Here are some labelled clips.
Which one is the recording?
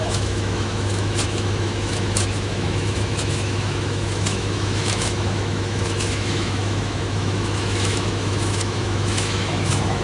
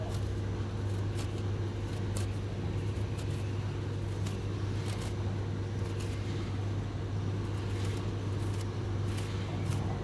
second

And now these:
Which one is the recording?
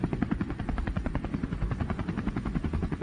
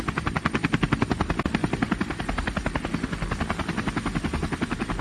second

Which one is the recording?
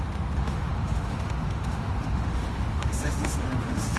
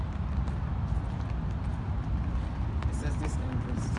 second